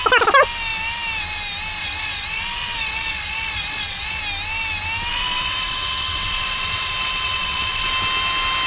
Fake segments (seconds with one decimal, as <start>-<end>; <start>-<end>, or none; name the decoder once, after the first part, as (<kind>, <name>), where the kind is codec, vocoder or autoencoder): 1.8-4.2 (vocoder, WaveNeXt); 5.1-7.9